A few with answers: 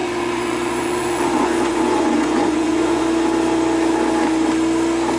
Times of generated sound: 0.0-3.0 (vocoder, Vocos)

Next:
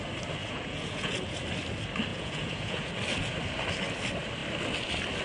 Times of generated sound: 0.4-1.1 (vocoder, Vocos); 2.1-2.9